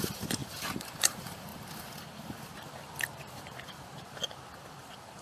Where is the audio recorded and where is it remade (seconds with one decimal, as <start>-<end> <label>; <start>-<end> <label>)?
0.0-1.5 remade; 1.5-2.4 recorded; 2.4-4.2 remade; 4.2-4.8 recorded; 4.8-5.2 remade